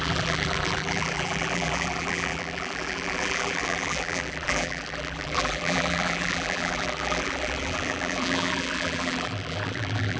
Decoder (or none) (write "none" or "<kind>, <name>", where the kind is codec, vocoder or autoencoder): vocoder, BigVGAN v2